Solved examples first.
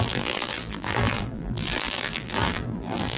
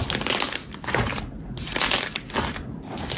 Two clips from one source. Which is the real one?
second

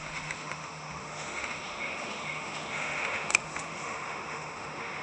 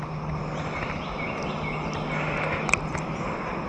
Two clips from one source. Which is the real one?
second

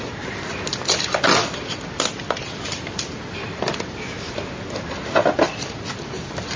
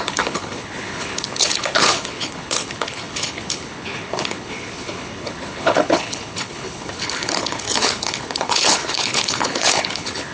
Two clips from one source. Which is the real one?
first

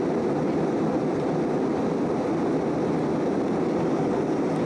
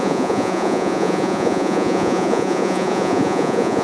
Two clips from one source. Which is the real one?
first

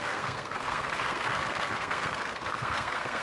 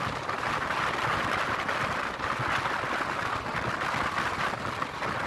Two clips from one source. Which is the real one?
second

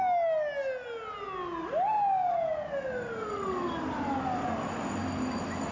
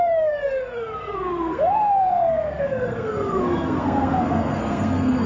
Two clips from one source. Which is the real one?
first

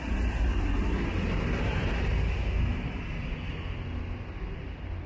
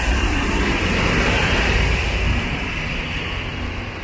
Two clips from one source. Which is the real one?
first